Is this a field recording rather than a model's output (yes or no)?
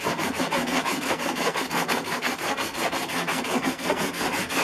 no